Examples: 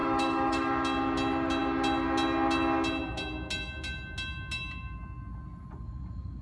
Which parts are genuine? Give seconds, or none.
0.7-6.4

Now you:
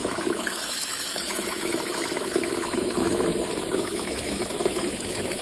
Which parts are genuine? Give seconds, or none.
none

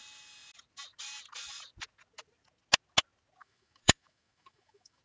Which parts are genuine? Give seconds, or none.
0.0-3.4